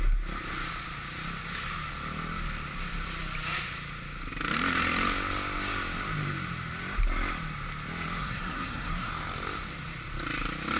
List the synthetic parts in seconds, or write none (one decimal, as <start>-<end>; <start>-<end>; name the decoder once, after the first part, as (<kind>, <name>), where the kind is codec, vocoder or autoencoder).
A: 8.2-9.1 (codec, SNAC)